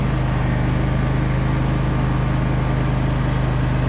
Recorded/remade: recorded